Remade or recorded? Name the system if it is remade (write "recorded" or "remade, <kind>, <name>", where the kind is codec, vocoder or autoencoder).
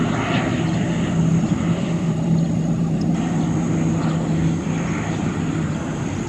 recorded